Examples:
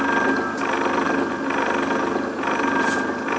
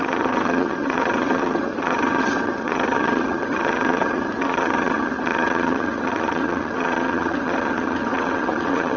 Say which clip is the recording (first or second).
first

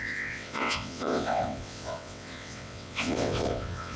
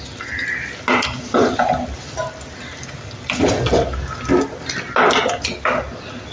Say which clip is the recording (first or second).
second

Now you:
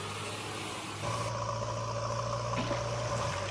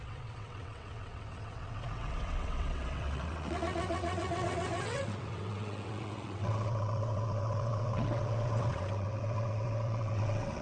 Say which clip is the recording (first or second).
first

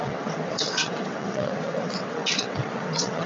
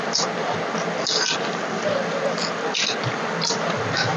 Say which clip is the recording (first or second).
second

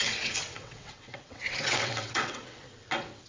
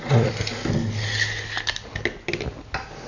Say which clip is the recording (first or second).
second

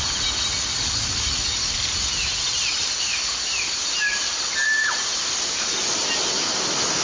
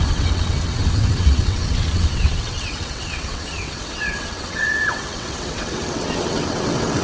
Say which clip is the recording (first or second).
first